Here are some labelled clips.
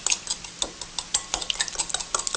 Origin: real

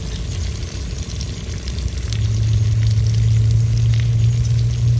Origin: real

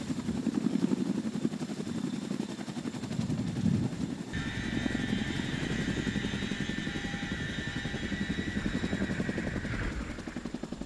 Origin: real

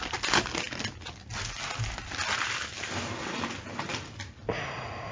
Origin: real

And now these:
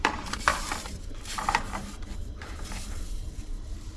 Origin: fake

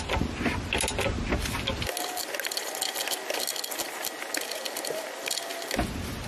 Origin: real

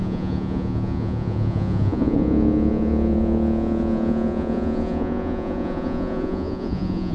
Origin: fake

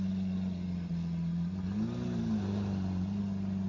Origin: real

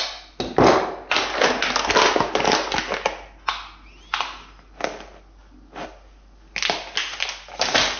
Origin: real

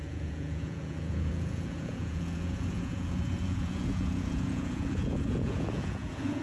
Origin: fake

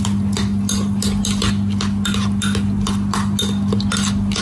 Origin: real